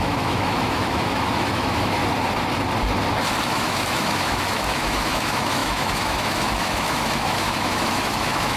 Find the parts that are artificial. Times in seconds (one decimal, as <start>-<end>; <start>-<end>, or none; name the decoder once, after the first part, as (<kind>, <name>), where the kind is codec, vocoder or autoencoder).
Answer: 0.0-2.0 (autoencoder, DAC-VAE); 3.4-8.6